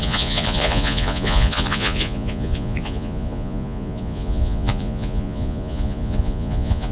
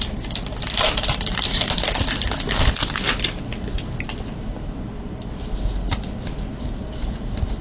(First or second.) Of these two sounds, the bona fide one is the second